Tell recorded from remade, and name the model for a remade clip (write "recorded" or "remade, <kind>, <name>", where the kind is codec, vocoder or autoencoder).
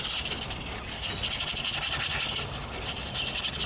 recorded